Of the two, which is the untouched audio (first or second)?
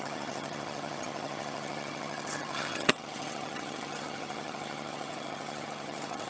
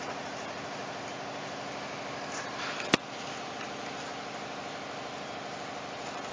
second